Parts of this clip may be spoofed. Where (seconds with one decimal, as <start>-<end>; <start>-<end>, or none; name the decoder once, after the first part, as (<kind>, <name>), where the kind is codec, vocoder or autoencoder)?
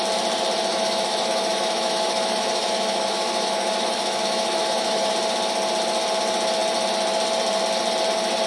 0.7-5.1 (autoencoder, DAC-VAE)